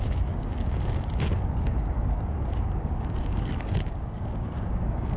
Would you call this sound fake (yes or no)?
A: yes